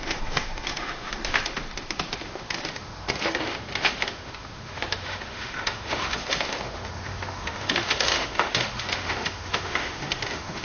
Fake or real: fake